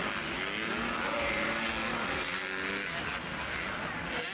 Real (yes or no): yes